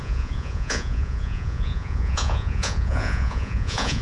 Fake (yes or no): yes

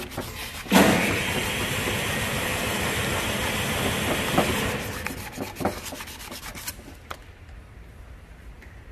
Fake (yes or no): no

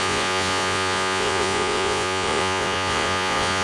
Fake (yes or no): yes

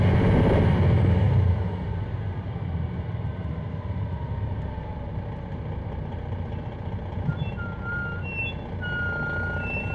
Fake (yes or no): no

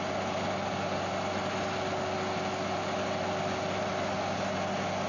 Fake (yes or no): no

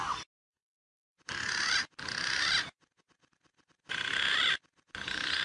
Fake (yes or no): no